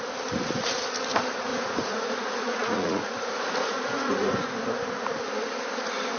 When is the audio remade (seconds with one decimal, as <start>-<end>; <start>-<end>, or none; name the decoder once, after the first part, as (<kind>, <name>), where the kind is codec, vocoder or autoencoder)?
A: 1.5-4.6 (vocoder, Vocos)